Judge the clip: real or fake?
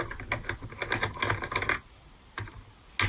real